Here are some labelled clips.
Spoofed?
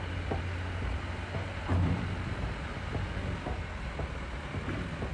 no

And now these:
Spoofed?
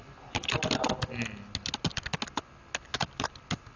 no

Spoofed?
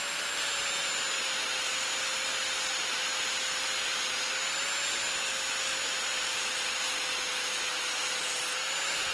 no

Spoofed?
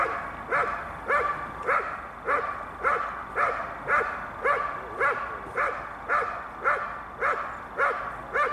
no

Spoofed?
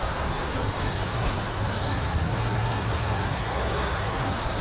yes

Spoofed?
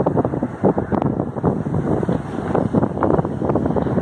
no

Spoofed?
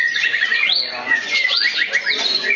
yes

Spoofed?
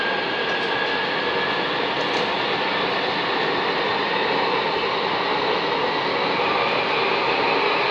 no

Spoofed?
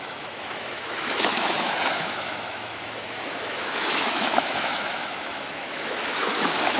yes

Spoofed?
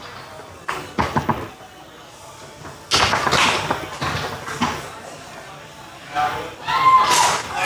no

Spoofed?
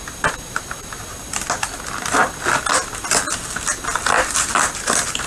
no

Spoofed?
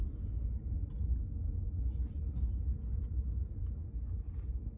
no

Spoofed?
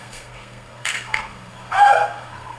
yes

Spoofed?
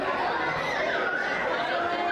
no